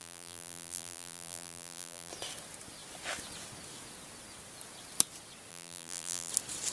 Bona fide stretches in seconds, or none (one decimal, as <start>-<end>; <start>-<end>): 2.1-5.5; 6.3-6.7